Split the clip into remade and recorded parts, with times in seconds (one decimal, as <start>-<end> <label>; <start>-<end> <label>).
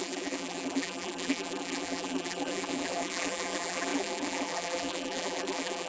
0.0-5.9 remade